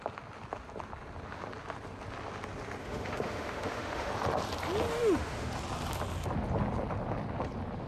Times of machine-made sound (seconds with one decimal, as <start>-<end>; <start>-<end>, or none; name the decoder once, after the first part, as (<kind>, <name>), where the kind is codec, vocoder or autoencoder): 2.8-4.1 (autoencoder, DAC-VAE); 4.9-5.5